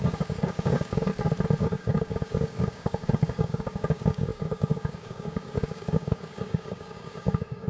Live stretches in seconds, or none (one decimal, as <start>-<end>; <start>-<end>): 1.1-1.6